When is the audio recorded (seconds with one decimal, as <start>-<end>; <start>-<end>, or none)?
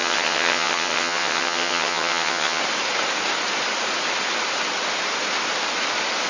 2.6-6.3